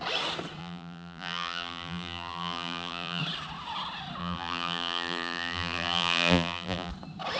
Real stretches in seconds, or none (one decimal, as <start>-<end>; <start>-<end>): 0.0-0.6; 3.2-4.2; 6.9-7.4